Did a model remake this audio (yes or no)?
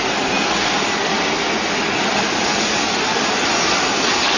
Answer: no